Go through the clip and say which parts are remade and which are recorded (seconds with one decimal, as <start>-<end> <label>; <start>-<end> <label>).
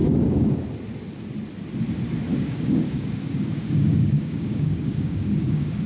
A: 0.0-0.7 remade; 0.7-2.3 recorded; 2.3-5.9 remade